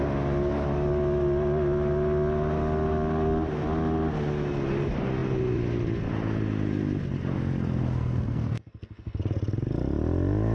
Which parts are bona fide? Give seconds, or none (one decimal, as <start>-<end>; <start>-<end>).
0.0-8.0; 9.2-10.5